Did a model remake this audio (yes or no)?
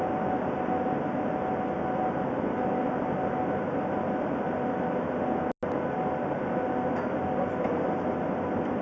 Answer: no